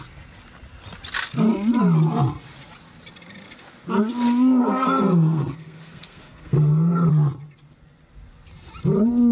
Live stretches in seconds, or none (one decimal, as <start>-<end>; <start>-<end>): 0.0-4.6; 7.1-9.3